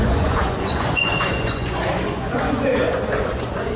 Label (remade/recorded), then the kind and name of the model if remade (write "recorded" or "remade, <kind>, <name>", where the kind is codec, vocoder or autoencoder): remade, vocoder, Vocos